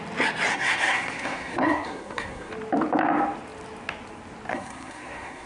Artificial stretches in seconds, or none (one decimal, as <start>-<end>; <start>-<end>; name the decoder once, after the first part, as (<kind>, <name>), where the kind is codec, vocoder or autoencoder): 0.5-2.5 (codec, SNAC); 4.5-5.5